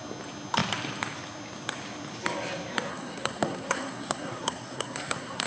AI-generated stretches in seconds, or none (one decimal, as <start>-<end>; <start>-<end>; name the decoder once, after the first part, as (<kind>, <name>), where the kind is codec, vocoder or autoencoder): 2.9-5.5 (codec, SNAC)